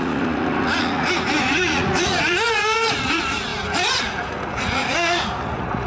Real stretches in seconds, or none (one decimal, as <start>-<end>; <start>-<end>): none